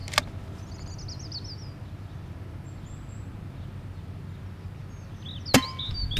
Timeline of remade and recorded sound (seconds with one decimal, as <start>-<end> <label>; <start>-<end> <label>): 0.0-6.2 recorded